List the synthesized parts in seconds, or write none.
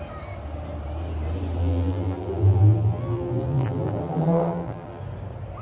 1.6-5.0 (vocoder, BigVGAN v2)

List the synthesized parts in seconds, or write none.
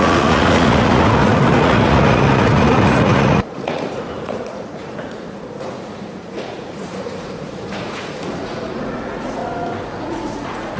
0.0-9.4 (vocoder, Vocos); 10.0-10.8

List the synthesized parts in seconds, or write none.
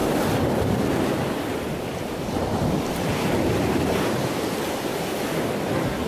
none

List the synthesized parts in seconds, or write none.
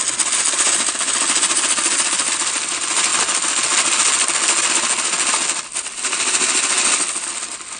none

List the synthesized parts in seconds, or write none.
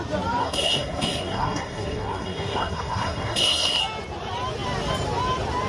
0.4-3.8 (codec, SNAC)